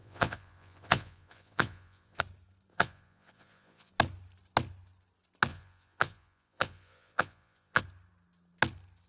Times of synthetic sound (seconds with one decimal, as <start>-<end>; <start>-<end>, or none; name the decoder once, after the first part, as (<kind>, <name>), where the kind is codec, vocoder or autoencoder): 0.0-2.2 (vocoder, Vocos); 2.7-3.9; 5.5-7.8